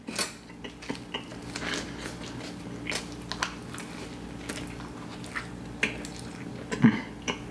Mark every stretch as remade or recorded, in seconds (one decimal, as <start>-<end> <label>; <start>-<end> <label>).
0.0-7.5 recorded